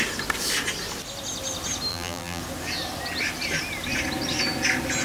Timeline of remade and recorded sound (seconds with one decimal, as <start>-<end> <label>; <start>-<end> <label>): 0.0-1.9 recorded; 1.9-2.4 remade; 2.4-5.0 recorded